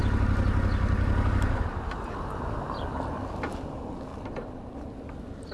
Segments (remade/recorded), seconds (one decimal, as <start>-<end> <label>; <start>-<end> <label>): 0.0-4.1 recorded; 4.1-4.9 remade; 4.9-5.5 recorded